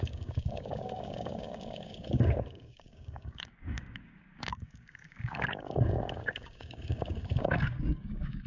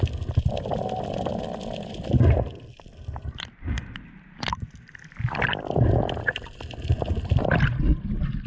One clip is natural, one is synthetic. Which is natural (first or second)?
second